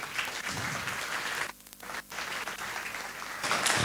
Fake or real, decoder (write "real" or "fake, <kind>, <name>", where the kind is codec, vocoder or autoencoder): real